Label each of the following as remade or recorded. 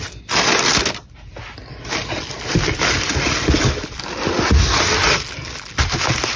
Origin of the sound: recorded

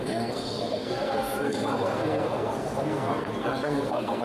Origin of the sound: remade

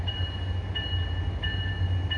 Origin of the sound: recorded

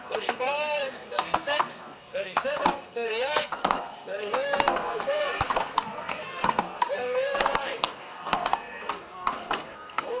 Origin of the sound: remade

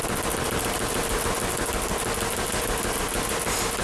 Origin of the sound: recorded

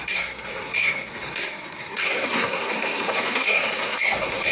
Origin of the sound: remade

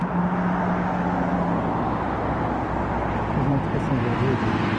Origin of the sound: recorded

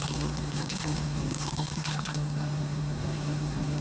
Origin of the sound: remade